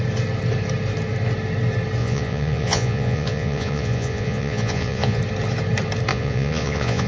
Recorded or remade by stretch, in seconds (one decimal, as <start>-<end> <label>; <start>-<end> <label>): 0.0-2.0 recorded; 2.0-5.2 remade; 5.2-6.1 recorded; 6.1-7.1 remade